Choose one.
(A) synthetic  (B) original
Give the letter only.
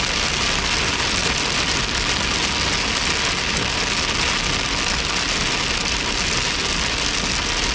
B